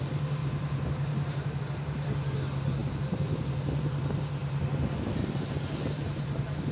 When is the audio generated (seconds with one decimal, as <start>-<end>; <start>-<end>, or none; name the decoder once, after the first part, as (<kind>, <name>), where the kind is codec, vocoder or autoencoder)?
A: 0.4-1.6 (vocoder, BigVGAN v2); 2.8-3.4